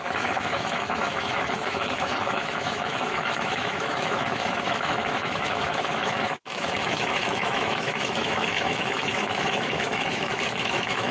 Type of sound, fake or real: fake